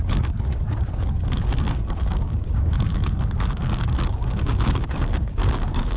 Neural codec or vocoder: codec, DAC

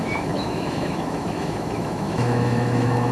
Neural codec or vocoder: autoencoder, DAC-VAE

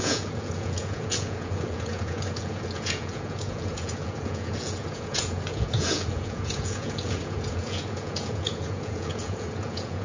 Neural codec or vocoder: vocoder, Vocos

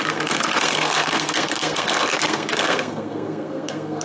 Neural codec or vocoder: codec, SNAC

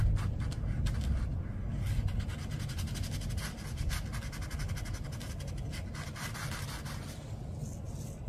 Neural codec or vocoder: none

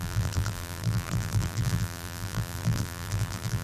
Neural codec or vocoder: vocoder, BigVGAN v2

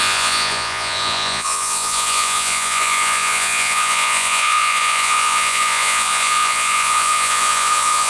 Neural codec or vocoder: vocoder, Vocos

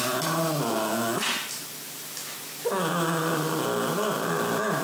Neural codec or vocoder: none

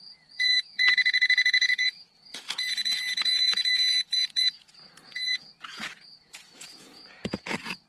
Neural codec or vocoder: vocoder, Vocos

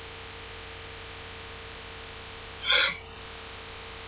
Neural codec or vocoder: none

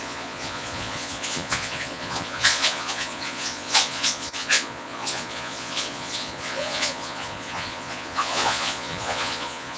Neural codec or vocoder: vocoder, Vocos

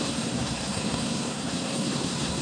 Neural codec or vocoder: codec, SNAC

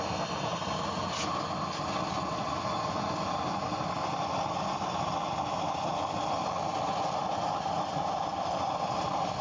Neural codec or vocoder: none